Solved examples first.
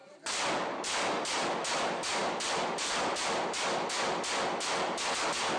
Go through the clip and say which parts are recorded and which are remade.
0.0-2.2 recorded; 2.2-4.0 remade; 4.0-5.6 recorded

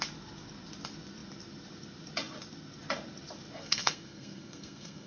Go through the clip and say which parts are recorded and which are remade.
0.0-3.6 recorded; 3.6-5.1 remade

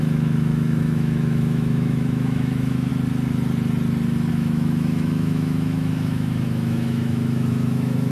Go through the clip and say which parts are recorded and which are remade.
0.0-2.9 remade; 2.9-4.3 recorded; 4.3-8.1 remade

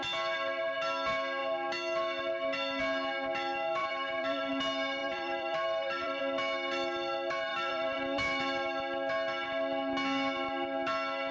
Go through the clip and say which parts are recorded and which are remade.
0.0-3.8 recorded; 3.8-4.5 remade; 4.5-5.0 recorded; 5.0-6.2 remade; 6.2-7.5 recorded; 7.5-8.4 remade; 8.4-11.3 recorded

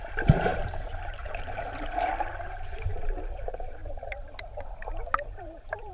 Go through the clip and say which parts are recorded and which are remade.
0.0-3.8 remade; 3.8-5.2 recorded; 5.2-5.9 remade

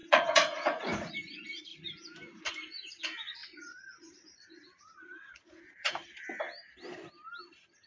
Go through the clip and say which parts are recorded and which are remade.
0.0-1.1 remade; 1.1-3.4 recorded; 3.4-5.9 remade; 5.9-7.9 recorded

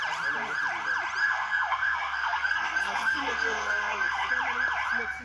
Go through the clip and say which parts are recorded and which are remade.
0.0-1.2 recorded; 1.2-4.3 remade; 4.3-5.2 recorded